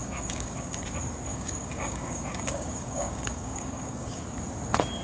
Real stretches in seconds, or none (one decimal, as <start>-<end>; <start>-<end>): 0.8-1.3; 4.2-5.0